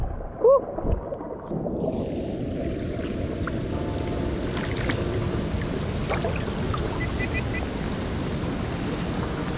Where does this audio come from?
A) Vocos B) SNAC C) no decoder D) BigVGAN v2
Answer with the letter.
C